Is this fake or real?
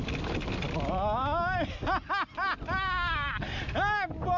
real